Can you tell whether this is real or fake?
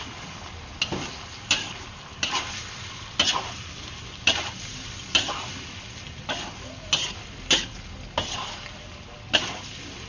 real